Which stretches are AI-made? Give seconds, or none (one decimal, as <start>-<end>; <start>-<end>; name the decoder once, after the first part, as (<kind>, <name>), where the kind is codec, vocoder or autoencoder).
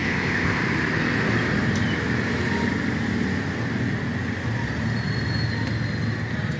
0.0-0.6 (codec, ZipCodec)